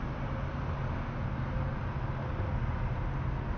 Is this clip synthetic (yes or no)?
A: no